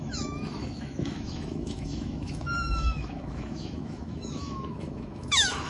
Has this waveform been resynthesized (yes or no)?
yes